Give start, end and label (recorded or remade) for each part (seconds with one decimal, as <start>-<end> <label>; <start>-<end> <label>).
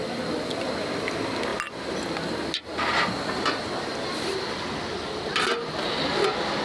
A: 0.0-6.6 recorded